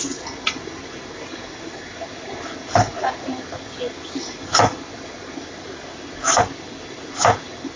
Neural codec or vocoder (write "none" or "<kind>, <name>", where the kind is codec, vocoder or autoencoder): none